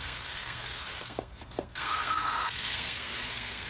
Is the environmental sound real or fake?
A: fake